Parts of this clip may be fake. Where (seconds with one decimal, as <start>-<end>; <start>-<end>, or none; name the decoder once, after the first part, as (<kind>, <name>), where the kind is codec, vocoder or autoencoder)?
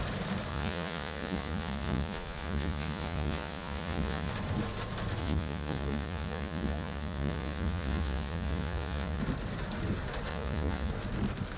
0.5-4.3 (vocoder, Vocos); 5.2-9.2; 10.3-10.9